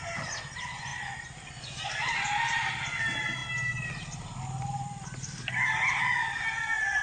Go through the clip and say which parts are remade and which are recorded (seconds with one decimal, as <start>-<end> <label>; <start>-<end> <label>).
0.0-7.0 recorded

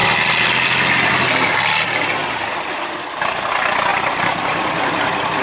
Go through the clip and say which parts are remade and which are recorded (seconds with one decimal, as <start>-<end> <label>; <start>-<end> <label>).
0.0-1.1 remade; 1.1-3.9 recorded; 3.9-4.9 remade; 4.9-5.4 recorded

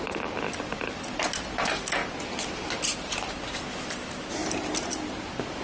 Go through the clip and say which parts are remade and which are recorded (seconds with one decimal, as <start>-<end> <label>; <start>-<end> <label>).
0.0-5.6 recorded

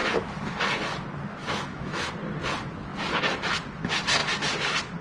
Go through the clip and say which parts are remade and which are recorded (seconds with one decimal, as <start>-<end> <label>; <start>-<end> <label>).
0.0-1.4 recorded; 1.4-2.1 remade; 2.1-5.0 recorded

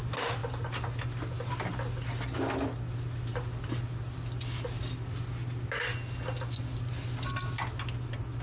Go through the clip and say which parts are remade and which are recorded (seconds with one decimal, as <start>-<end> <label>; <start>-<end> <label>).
0.0-8.4 recorded

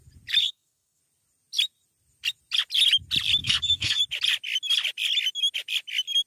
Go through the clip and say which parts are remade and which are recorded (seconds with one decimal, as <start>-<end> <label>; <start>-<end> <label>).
0.0-0.4 recorded; 0.4-1.0 remade; 1.0-3.4 recorded; 3.4-4.0 remade; 4.0-6.3 recorded

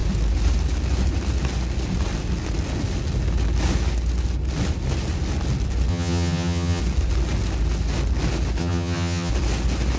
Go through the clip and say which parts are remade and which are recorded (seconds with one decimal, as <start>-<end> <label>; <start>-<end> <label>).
0.0-5.9 recorded; 5.9-6.8 remade; 6.8-8.6 recorded; 8.6-9.3 remade; 9.3-10.0 recorded

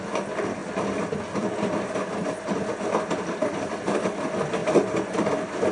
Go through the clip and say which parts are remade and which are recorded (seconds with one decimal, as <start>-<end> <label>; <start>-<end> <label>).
0.0-5.7 recorded